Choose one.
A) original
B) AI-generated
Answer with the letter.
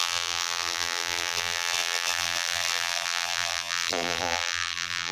B